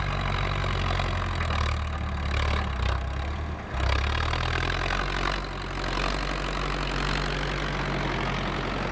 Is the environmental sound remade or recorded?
recorded